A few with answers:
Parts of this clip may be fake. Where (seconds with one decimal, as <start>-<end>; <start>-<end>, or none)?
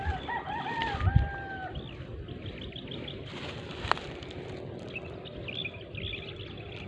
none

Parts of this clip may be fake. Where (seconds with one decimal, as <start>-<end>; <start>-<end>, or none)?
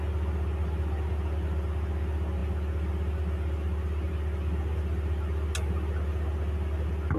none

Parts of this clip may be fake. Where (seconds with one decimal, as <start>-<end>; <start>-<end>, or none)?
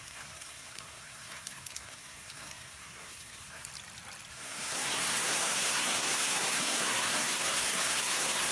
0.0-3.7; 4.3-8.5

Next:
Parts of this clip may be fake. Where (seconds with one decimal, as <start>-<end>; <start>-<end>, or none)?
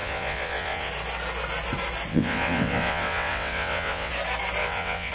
0.0-0.9; 2.1-4.1; 4.6-5.1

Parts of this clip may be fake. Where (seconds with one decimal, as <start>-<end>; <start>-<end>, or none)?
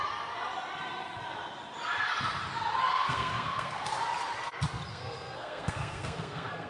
2.9-3.9; 4.9-6.7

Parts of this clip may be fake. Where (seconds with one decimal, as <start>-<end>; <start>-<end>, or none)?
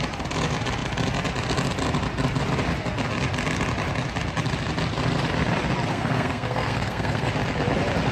5.9-7.3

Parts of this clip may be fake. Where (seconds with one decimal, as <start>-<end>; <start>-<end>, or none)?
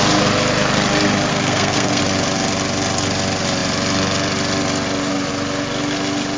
1.3-2.0